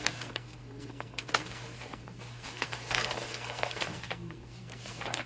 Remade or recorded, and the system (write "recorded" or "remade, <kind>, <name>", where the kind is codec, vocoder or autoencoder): remade, codec, SNAC